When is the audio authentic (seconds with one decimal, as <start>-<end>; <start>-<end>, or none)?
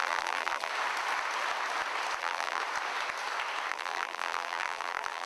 0.7-2.2; 2.6-3.7